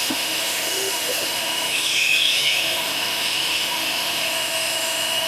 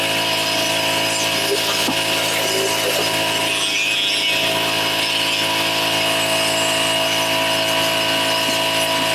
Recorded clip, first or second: second